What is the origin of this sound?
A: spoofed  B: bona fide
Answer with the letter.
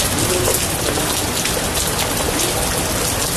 B